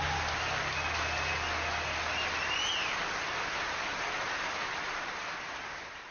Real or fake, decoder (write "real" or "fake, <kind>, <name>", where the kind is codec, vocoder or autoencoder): real